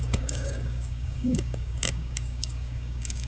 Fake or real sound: fake